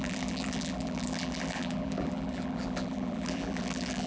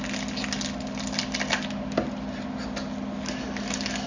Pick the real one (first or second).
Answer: second